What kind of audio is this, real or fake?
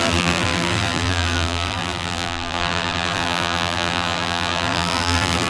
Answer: fake